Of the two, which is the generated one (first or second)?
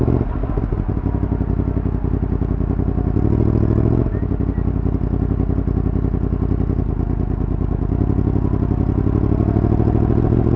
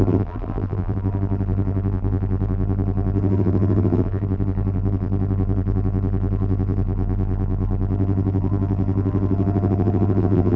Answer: second